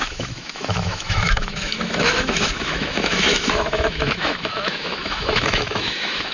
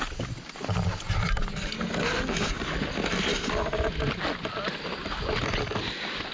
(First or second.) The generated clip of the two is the first